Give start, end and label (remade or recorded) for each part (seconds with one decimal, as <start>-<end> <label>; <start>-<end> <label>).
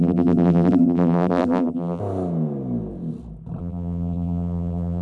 0.0-2.0 remade; 2.0-3.6 recorded; 3.6-5.0 remade